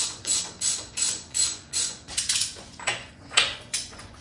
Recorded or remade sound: remade